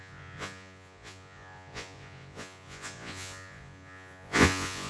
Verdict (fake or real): fake